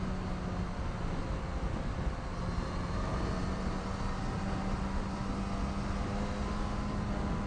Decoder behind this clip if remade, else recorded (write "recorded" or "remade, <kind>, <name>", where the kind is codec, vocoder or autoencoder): recorded